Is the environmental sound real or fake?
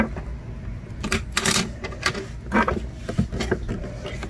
real